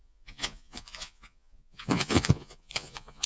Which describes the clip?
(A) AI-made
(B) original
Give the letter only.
A